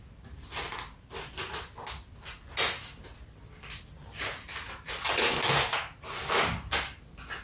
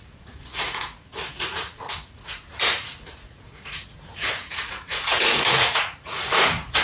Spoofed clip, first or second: second